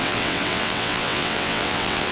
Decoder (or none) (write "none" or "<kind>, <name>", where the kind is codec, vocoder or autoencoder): vocoder, WaveNeXt